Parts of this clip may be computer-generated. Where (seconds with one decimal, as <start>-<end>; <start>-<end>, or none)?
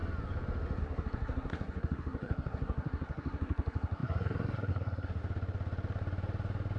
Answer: 0.8-5.2